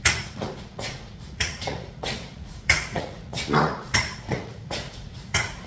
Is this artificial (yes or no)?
yes